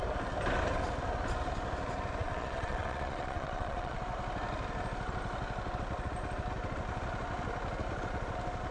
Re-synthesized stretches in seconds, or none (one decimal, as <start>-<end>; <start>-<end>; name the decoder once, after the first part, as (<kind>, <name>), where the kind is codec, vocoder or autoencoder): 2.2-4.0 (vocoder, Vocos)